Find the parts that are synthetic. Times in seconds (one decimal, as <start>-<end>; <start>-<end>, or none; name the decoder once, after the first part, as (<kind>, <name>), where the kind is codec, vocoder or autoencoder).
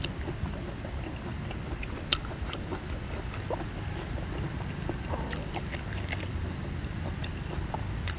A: none